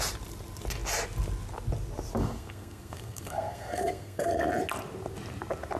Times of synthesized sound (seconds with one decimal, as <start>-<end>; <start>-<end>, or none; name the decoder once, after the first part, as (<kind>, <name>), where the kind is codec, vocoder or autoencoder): 2.2-4.3 (codec, SNAC)

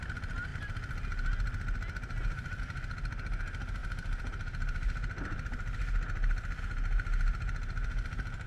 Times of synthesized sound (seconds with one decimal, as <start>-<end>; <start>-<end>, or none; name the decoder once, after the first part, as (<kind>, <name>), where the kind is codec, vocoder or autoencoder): none

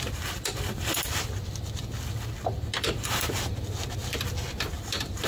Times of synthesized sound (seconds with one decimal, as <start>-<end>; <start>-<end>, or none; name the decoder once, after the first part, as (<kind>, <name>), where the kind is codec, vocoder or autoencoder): none

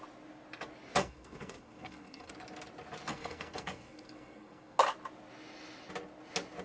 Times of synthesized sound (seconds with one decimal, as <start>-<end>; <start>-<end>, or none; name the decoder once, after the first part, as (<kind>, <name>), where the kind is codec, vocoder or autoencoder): 1.0-2.3 (codec, SNAC); 3.1-4.8

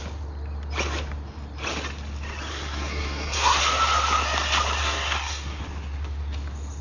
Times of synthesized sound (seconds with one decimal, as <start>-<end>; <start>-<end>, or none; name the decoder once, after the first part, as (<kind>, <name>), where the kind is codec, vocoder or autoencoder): 2.5-3.6 (codec, SNAC); 4.8-5.6

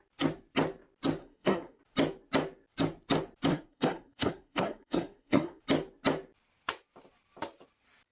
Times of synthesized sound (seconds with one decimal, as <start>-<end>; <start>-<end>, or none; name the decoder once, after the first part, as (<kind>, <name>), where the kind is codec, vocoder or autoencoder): 1.2-1.8 (codec, SNAC); 3.5-5.6

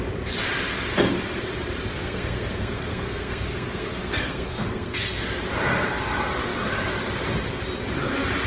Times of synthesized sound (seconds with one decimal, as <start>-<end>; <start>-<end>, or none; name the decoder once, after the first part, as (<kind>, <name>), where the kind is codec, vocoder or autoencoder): 1.9-5.2 (codec, SNAC)